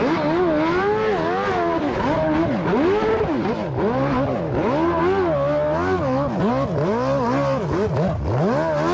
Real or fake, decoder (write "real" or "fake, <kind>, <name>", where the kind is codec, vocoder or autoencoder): real